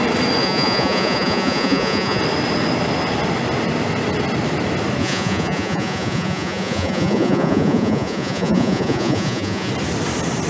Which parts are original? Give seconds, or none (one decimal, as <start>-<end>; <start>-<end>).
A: 0.0-0.4; 2.2-5.0; 9.7-10.5